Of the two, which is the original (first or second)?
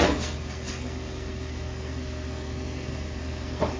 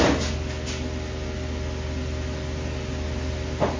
second